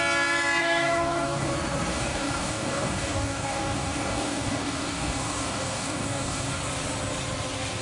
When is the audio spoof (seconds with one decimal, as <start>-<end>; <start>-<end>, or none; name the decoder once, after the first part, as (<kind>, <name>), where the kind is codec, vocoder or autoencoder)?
0.6-1.5 (codec, DAC); 1.9-6.6